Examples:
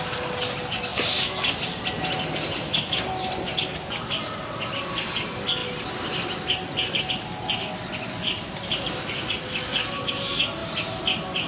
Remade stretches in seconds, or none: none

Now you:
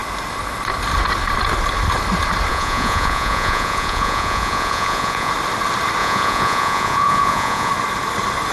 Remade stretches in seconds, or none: 2.5-5.3 (vocoder, Vocos); 6.0-7.7

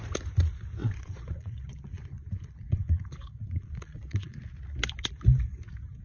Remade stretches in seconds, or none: 0.8-4.4 (vocoder, Vocos)

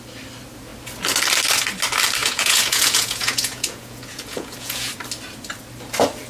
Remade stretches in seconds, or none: 2.2-4.9 (vocoder, Vocos)

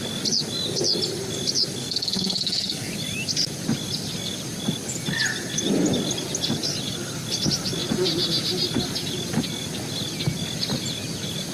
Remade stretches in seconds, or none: 1.8-2.9 (codec, SNAC)

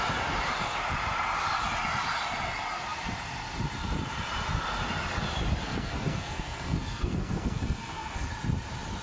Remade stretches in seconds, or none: 5.6-8.3 (codec, SNAC)